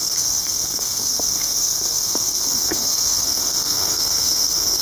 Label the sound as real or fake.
fake